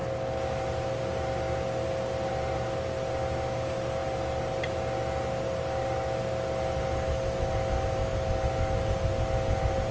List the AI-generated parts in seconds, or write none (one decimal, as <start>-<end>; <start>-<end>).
none